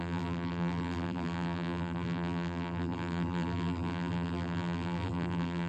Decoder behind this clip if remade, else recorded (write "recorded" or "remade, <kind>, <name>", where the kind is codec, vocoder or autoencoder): remade, vocoder, BigVGAN v2